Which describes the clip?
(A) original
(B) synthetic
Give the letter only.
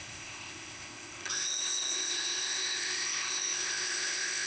B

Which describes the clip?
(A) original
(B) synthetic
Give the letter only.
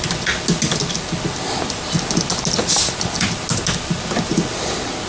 A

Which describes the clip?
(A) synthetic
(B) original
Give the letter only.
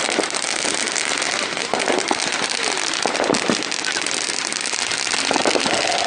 B